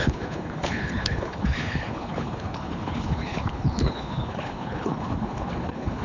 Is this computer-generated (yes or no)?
yes